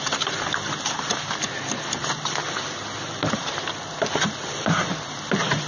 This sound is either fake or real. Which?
real